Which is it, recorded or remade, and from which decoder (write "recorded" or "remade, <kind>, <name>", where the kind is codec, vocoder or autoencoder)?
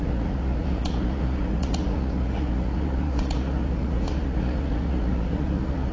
remade, vocoder, Vocos